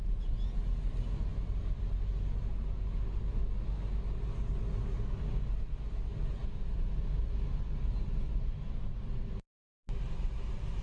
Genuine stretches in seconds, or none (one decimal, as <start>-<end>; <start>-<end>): 0.0-10.8